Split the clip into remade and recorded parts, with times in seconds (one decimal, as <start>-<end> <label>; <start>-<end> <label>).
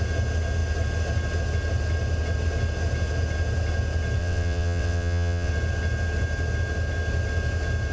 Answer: 0.0-4.2 recorded; 4.2-5.5 remade; 5.5-7.9 recorded